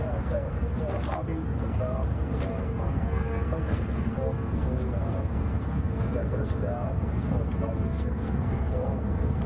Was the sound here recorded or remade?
remade